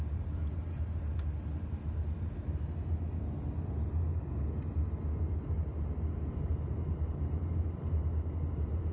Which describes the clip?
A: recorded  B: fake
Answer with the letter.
A